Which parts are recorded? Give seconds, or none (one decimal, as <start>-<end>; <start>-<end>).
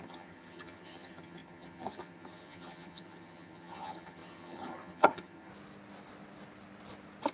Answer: 5.5-7.3